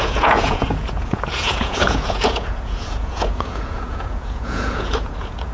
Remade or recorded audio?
remade